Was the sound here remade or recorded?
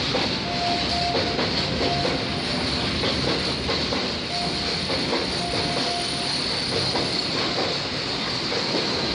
recorded